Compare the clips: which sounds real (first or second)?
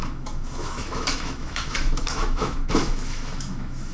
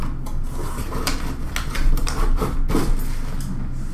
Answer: second